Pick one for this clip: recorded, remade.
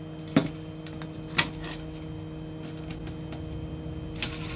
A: recorded